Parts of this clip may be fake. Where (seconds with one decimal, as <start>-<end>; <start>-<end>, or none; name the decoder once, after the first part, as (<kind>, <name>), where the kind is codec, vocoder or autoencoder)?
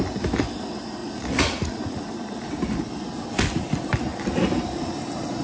1.0-2.0 (vocoder, Vocos)